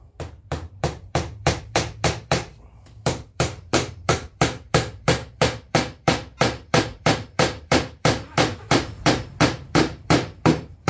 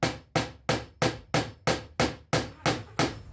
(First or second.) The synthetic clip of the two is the first